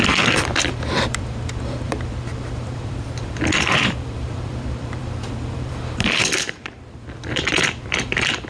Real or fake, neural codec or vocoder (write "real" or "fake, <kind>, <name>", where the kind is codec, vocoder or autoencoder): fake, vocoder, BigVGAN v2